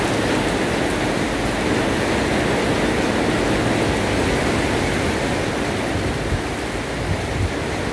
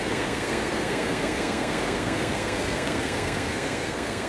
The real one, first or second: first